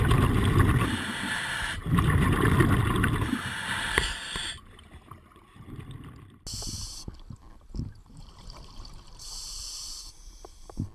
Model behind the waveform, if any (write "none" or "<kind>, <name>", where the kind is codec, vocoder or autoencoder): none